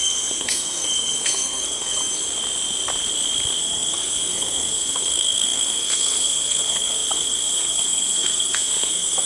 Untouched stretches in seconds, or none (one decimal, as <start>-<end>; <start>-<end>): 2.0-3.6